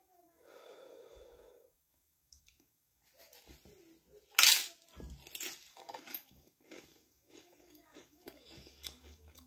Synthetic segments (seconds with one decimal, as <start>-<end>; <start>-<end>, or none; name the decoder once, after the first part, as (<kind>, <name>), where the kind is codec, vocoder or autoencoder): 0.0-3.0 (codec, DAC); 5.7-9.5